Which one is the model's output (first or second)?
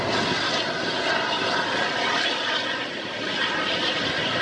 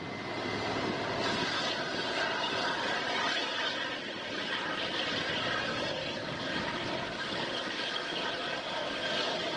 second